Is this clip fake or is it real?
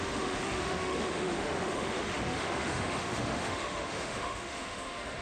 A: fake